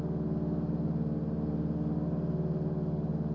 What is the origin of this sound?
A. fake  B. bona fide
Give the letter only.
B